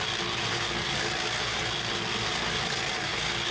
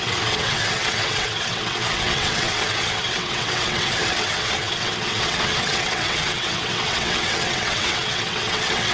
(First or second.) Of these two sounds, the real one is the first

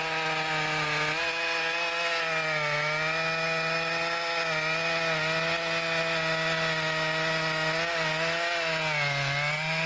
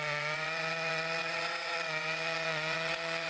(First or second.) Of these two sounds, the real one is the first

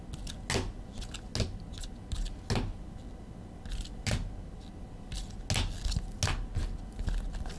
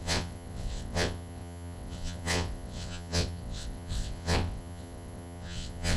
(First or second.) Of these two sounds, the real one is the first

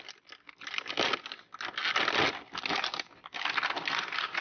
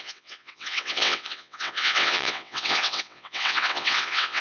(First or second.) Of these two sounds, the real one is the first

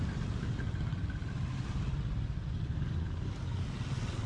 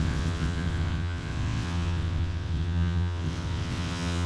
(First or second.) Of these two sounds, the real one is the first